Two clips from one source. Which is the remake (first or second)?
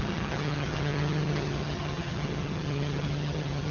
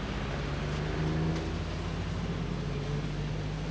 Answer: first